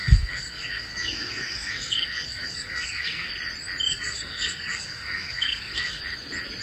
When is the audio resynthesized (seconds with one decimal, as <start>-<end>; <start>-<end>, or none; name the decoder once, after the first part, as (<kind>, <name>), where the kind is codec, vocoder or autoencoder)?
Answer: 0.0-3.3 (codec, SNAC); 3.9-6.0